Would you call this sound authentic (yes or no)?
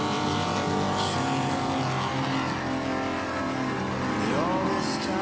yes